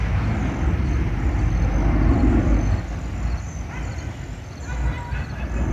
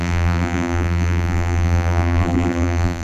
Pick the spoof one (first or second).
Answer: second